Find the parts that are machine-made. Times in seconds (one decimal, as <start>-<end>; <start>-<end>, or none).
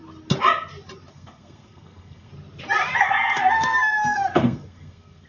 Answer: 1.1-2.3; 3.0-5.3